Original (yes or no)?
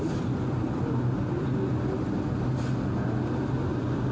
yes